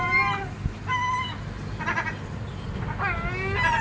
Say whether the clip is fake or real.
real